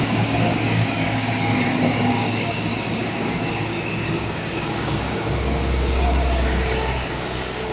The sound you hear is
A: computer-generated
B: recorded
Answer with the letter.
A